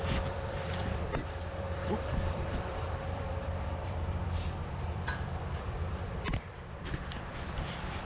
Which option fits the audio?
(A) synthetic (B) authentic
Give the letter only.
A